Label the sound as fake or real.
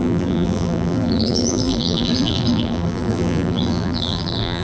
fake